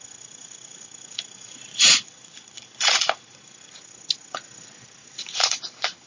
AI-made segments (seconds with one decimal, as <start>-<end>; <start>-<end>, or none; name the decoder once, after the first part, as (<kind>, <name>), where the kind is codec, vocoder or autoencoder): 1.7-3.5 (vocoder, Vocos); 5.0-6.1